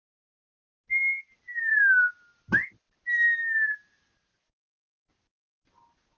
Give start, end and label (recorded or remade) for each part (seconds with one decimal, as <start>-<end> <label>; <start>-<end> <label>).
0.0-6.2 recorded